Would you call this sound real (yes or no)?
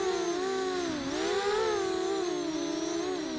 yes